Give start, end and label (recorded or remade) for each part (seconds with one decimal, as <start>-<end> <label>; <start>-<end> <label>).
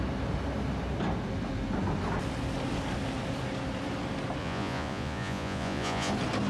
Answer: 0.0-4.4 recorded; 4.4-6.1 remade; 6.1-6.5 recorded